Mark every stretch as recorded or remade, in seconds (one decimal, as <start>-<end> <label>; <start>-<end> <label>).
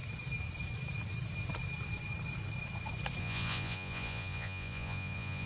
0.0-3.2 recorded; 3.2-5.5 remade